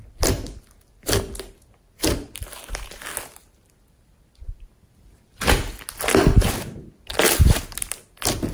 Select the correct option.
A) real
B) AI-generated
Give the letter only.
A